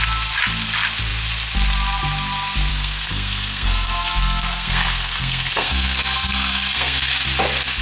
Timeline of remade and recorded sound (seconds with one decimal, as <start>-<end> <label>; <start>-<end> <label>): 0.0-2.7 recorded; 2.7-7.1 remade; 7.1-7.8 recorded

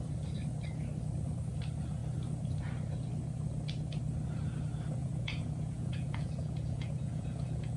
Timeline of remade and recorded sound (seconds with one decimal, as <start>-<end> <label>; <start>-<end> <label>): 0.0-5.0 recorded; 5.0-7.8 remade

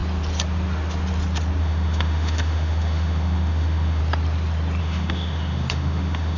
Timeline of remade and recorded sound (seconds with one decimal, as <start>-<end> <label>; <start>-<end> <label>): 0.0-1.6 recorded; 1.6-4.0 remade; 4.0-4.8 recorded; 4.8-6.4 remade